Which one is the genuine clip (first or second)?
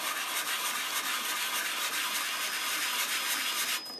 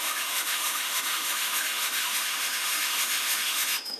first